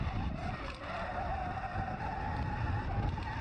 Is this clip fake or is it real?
real